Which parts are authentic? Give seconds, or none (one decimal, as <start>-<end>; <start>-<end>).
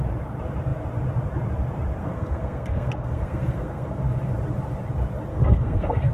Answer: 0.0-2.0; 4.0-5.3